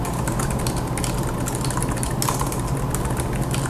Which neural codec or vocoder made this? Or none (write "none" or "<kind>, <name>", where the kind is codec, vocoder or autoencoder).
none